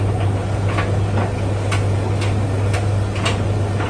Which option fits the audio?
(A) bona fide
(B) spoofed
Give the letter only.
A